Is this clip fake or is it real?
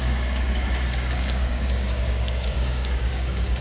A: fake